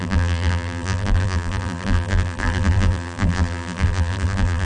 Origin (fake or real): fake